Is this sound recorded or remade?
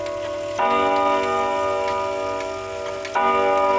recorded